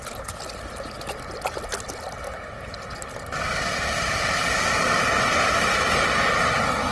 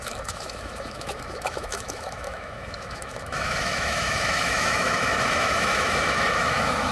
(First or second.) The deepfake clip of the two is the second